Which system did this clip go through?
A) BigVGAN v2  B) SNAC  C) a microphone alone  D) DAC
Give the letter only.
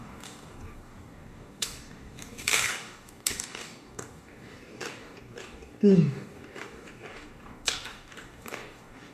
D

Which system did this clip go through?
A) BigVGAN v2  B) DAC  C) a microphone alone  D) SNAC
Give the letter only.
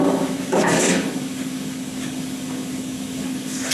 B